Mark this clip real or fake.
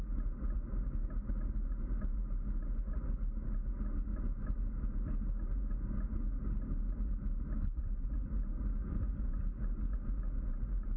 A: real